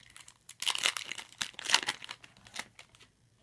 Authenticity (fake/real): real